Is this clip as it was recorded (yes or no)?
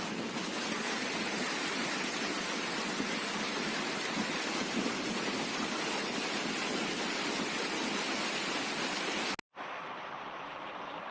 yes